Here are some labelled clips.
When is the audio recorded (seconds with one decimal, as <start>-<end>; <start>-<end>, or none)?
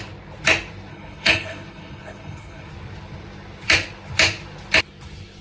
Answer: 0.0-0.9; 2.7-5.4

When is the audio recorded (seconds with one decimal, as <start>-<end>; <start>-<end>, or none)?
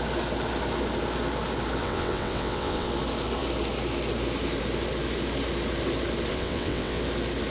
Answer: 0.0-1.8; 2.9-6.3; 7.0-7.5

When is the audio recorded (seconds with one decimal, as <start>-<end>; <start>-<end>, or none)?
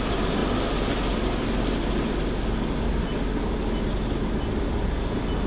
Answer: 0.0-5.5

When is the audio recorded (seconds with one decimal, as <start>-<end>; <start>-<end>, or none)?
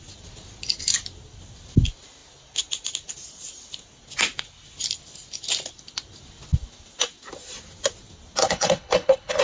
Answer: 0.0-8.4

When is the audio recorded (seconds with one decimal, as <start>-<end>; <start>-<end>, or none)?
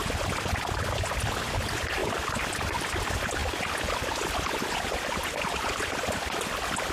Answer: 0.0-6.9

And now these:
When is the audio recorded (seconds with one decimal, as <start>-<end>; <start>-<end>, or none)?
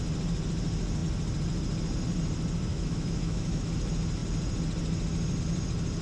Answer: 0.0-2.7; 3.7-6.0